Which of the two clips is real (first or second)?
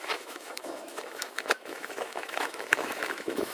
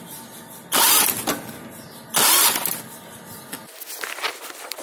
second